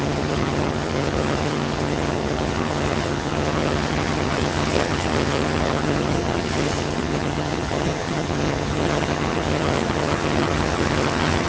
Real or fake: fake